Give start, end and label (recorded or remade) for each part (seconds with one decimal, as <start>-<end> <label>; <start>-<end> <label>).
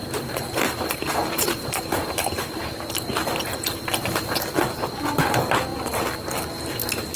0.0-4.3 remade; 4.3-7.2 recorded